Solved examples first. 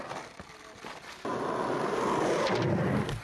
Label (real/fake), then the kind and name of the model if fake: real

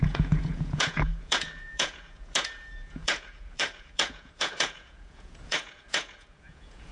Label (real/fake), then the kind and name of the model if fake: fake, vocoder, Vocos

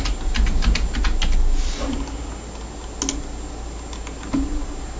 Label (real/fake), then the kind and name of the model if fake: real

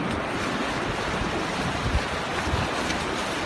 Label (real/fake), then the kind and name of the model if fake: real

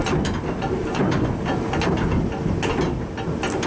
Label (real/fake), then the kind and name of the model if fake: real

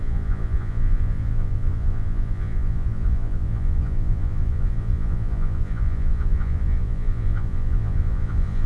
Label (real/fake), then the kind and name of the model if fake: fake, vocoder, Vocos